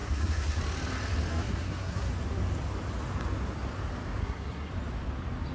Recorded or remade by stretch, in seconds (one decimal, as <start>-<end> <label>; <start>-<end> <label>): 0.0-0.6 remade; 0.6-1.3 recorded; 1.3-2.1 remade; 2.1-4.2 recorded; 4.2-4.7 remade; 4.7-5.5 recorded